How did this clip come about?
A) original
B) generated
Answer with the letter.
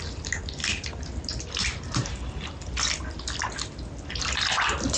A